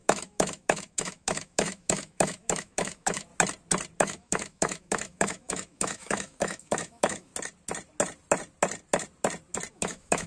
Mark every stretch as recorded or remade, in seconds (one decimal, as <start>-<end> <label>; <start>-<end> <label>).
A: 0.0-3.3 remade; 3.3-4.0 recorded; 4.0-7.3 remade; 7.3-9.7 recorded; 9.7-10.3 remade